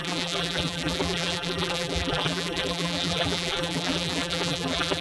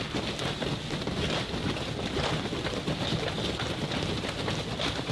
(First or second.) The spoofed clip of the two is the first